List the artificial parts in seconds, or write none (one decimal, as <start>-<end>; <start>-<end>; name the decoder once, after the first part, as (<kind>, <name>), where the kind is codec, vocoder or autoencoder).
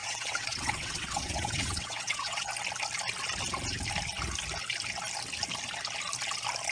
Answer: 0.0-2.5 (vocoder, WaveNeXt)